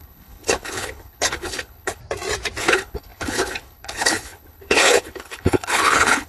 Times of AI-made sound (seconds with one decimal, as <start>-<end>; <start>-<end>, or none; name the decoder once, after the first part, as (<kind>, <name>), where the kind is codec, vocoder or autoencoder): 0.0-2.0 (codec, HILCodec); 2.6-6.3